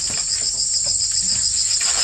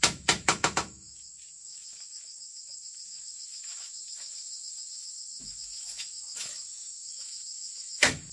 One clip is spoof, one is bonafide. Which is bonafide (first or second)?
first